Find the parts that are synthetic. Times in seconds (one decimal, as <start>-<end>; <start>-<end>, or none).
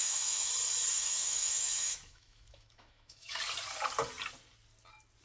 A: 0.0-0.5; 0.9-3.4